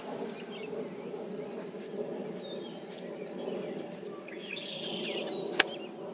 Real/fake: real